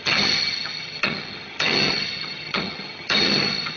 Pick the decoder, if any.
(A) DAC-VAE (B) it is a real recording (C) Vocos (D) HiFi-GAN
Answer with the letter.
D